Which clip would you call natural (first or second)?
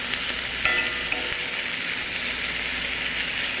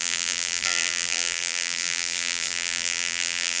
first